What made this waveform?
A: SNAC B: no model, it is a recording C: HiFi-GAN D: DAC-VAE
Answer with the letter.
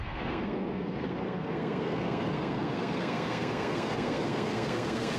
A